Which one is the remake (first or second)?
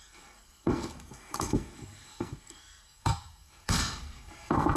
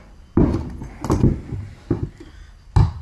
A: first